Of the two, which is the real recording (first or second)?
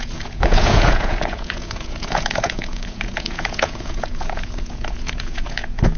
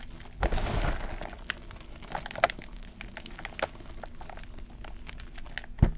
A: second